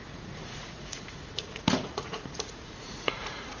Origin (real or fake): fake